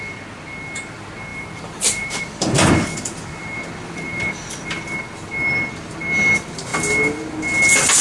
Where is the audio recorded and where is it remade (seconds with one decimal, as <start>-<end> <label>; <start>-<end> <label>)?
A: 0.0-1.3 recorded; 1.3-5.0 remade; 5.0-8.0 recorded